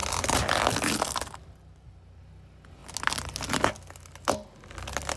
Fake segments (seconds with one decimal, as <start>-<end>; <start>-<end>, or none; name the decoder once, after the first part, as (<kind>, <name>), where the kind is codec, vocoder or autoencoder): none